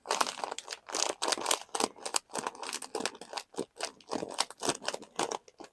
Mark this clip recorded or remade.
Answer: recorded